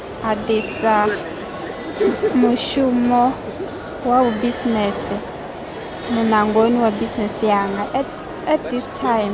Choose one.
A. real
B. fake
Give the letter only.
A